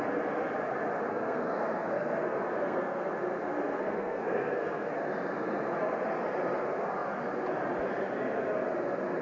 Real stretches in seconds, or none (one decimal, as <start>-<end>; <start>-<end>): 0.0-1.1; 3.1-3.7; 4.9-9.2